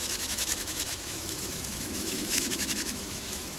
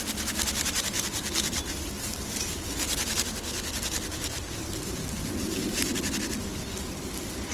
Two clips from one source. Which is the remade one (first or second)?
first